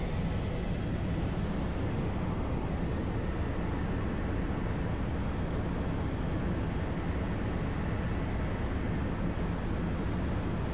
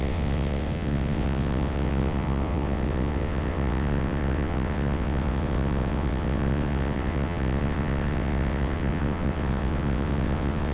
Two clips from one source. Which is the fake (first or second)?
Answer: second